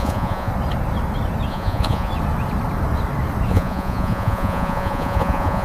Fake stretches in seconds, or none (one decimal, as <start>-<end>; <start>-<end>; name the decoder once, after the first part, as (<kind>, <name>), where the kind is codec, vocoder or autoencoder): 0.0-0.5 (vocoder, Vocos); 1.5-2.1; 3.5-5.6